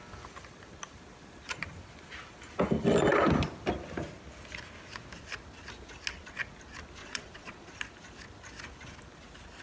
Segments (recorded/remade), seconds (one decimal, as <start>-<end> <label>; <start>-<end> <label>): 0.0-7.0 recorded; 7.0-7.7 remade; 7.7-9.6 recorded